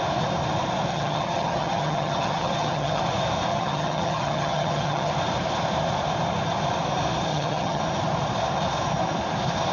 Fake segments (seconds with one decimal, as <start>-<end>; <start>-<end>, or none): 0.9-3.0; 3.5-5.1; 7.3-7.8